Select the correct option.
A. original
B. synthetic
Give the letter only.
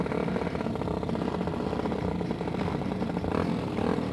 A